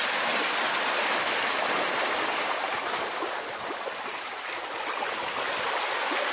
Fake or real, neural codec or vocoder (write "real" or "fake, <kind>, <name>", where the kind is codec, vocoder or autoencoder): real